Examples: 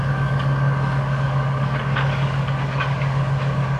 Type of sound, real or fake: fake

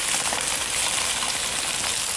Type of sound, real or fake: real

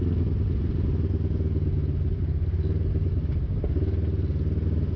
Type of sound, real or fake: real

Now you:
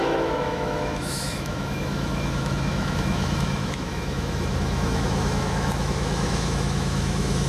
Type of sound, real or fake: fake